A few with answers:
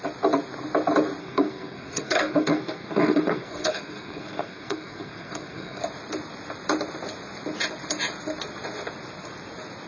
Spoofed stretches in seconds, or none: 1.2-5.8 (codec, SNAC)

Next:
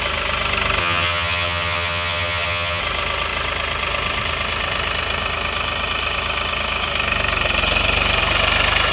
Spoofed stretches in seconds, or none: 0.8-2.8 (vocoder, HiFi-GAN)

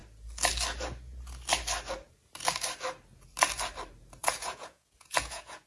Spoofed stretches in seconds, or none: 4.2-5.7 (vocoder, Vocos)

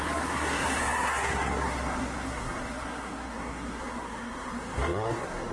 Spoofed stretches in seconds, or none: 0.0-5.5 (codec, SNAC)

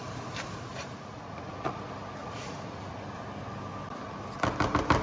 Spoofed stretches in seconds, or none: 0.7-1.8 (vocoder, Vocos); 2.2-3.0

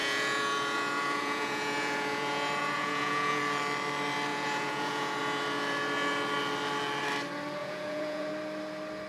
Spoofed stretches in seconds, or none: 0.0-3.4 (vocoder, Vocos); 4.3-5.2; 7.6-8.3